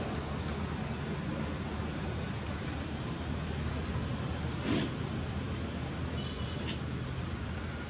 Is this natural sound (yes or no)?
yes